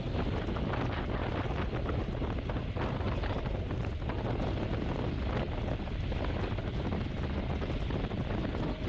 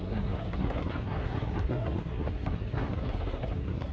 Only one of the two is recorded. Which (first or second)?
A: first